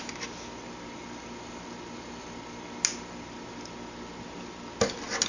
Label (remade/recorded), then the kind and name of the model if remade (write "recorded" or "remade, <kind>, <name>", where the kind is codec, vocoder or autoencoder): recorded